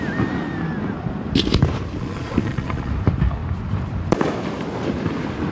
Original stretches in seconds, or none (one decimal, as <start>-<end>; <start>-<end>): 0.0-2.0; 2.9-5.5